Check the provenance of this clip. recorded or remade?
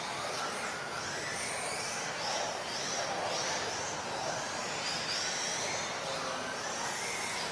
recorded